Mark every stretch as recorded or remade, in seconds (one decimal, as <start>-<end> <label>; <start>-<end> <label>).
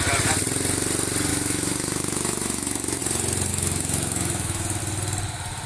0.0-1.3 recorded; 1.3-3.0 remade; 3.0-3.5 recorded; 3.5-4.8 remade; 4.8-5.7 recorded